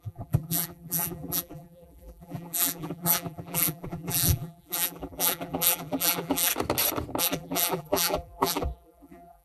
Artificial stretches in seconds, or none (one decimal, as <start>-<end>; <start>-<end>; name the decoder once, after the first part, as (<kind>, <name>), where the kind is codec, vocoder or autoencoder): 0.0-6.5 (vocoder, BigVGAN v2); 7.2-9.4

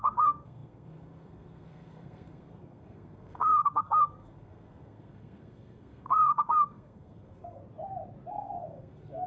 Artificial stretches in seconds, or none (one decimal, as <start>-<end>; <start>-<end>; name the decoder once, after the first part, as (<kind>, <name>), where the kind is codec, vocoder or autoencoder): 0.0-7.6 (codec, SNAC); 8.3-9.3

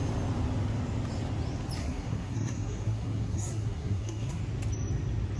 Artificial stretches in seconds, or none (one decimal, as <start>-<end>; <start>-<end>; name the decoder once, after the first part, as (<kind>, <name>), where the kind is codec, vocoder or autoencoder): 1.8-4.4 (codec, SNAC)

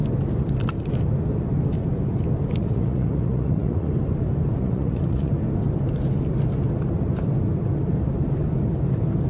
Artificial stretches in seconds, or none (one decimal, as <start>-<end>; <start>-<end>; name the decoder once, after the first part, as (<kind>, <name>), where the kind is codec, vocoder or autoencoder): 2.6-3.9 (vocoder, Vocos); 4.6-5.3

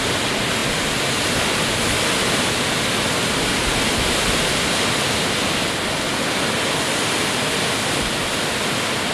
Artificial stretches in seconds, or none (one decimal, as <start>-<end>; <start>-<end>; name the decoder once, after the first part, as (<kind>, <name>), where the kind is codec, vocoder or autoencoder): none

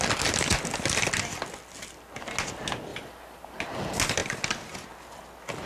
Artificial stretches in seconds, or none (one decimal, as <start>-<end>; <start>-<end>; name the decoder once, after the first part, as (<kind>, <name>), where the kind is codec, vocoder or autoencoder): 4.2-4.9 (vocoder, BigVGAN v2)